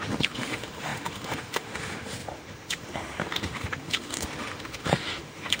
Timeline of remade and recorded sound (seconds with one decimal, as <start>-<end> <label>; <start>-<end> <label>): 0.0-5.6 remade